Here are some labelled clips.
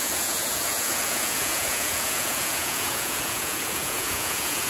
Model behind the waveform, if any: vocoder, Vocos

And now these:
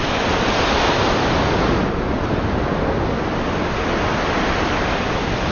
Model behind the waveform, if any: none